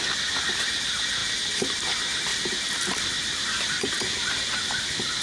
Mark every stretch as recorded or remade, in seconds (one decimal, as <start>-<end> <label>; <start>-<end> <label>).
0.0-2.3 recorded; 2.3-4.4 remade; 4.4-5.2 recorded